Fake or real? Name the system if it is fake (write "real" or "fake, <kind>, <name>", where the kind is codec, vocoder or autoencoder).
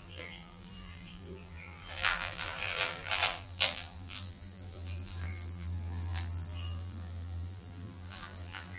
fake, vocoder, BigVGAN v2